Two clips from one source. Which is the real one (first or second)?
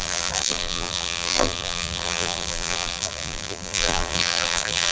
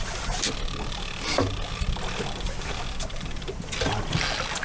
second